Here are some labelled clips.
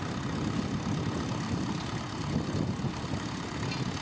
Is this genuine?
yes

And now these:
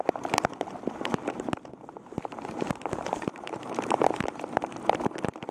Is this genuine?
no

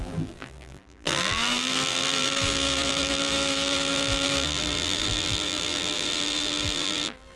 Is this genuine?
no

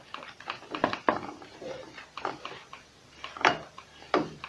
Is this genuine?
no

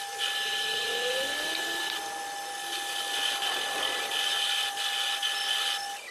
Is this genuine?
yes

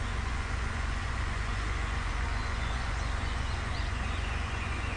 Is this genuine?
no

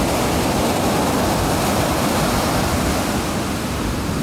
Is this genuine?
yes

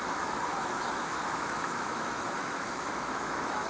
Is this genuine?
no